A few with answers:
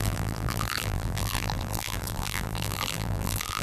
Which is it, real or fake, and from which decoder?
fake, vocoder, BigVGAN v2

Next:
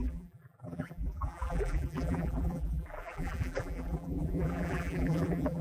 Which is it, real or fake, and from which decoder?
fake, vocoder, BigVGAN v2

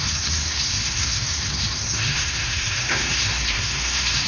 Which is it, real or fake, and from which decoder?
fake, codec, SNAC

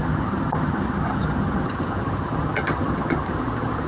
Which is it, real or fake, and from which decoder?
fake, vocoder, HiFi-GAN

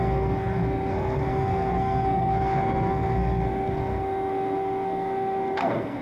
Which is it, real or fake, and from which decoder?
fake, codec, SNAC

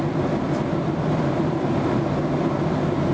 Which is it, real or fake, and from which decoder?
real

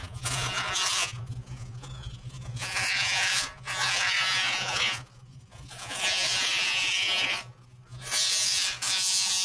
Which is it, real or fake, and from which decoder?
fake, vocoder, Vocos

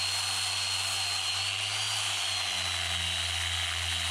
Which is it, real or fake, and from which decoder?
real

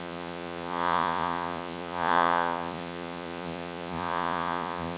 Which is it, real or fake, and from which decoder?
fake, vocoder, Vocos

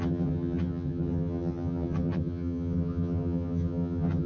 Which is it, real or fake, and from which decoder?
fake, vocoder, HiFi-GAN